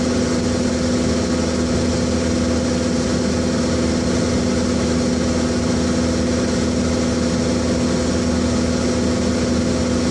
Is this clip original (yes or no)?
yes